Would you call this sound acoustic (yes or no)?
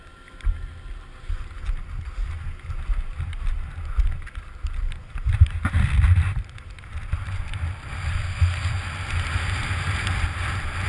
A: yes